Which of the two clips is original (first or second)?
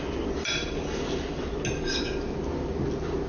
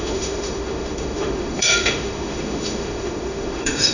first